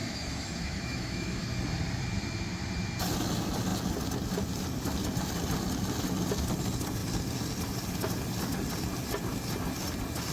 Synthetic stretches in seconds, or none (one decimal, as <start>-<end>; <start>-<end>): 0.0-1.4